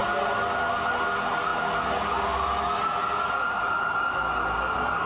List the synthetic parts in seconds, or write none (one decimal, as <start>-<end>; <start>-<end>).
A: none